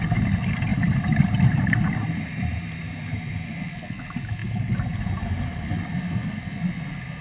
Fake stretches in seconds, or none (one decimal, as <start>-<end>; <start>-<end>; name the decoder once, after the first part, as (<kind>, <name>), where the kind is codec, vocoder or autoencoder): 0.7-3.3 (vocoder, BigVGAN v2); 4.4-5.6

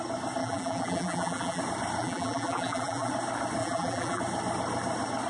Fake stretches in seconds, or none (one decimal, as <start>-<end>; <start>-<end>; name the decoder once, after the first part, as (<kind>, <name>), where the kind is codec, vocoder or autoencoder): 0.4-1.6 (vocoder, BigVGAN v2); 2.0-3.1; 3.6-4.2

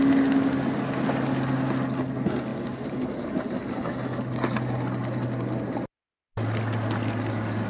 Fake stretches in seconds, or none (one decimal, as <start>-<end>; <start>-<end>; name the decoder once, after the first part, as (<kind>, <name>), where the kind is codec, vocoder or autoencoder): none

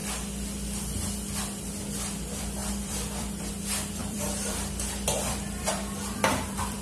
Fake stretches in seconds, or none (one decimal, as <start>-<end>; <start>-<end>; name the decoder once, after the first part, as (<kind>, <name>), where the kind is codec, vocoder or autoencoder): 2.6-3.5 (vocoder, BigVGAN v2); 4.0-6.8

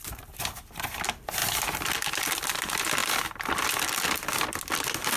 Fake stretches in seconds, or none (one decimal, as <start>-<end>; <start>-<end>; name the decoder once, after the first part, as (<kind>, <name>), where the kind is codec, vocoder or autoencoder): 0.0-1.4 (vocoder, BigVGAN v2); 2.1-3.0

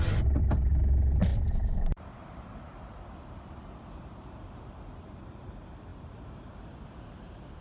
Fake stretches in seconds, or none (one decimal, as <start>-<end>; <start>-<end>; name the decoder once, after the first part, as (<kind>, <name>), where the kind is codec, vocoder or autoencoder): 1.3-4.7 (vocoder, BigVGAN v2); 5.9-6.6

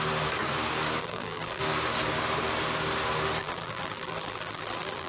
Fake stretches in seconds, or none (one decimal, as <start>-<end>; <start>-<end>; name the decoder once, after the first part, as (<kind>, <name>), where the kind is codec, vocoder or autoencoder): 1.0-1.6 (vocoder, BigVGAN v2); 3.4-5.1